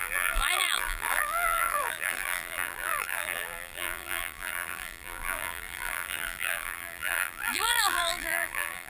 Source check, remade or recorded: remade